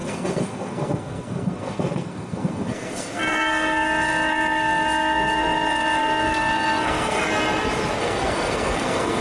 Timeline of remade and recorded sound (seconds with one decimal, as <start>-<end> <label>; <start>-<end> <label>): 0.0-7.3 remade; 7.3-8.0 recorded; 8.0-9.2 remade

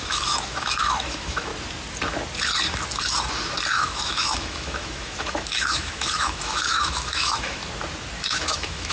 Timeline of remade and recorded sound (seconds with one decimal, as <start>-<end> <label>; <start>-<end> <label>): 0.0-1.5 remade; 1.5-3.7 recorded; 3.7-7.6 remade; 7.6-8.2 recorded; 8.2-8.9 remade

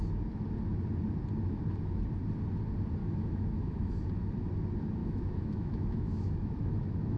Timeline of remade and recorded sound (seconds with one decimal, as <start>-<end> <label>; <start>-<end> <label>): 0.0-3.0 recorded; 3.0-3.9 remade; 3.9-5.0 recorded; 5.0-7.2 remade

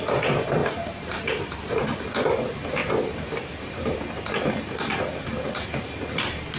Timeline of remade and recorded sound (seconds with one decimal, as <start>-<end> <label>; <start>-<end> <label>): 0.0-0.6 recorded; 0.6-1.8 remade; 1.8-2.8 recorded; 2.8-4.3 remade; 4.3-6.6 recorded